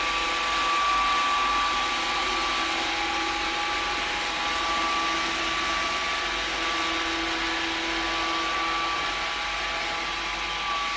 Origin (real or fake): real